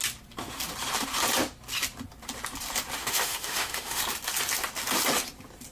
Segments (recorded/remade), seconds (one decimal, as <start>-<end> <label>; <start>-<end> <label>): 0.0-3.0 recorded; 3.0-4.0 remade; 4.0-5.7 recorded

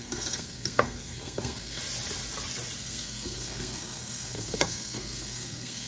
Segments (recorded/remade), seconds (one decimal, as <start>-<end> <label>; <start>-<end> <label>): 0.0-1.8 remade; 1.8-2.8 recorded; 2.8-5.9 remade

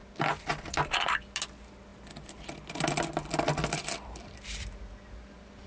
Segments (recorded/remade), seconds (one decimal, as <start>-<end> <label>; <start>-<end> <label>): 0.0-5.7 recorded

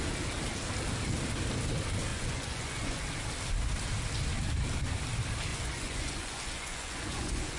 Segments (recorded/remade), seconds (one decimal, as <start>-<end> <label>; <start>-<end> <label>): 0.0-2.1 recorded; 2.1-3.0 remade; 3.0-5.5 recorded; 5.5-7.6 remade

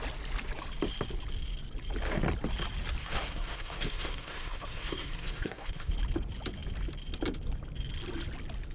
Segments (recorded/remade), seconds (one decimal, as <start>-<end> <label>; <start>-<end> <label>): 0.0-3.0 recorded; 3.0-5.9 remade; 5.9-8.7 recorded

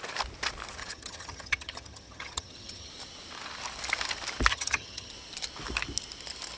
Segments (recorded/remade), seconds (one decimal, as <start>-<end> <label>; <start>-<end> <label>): 0.0-0.8 recorded; 0.8-2.9 remade; 2.9-4.5 recorded; 4.5-5.1 remade; 5.1-6.6 recorded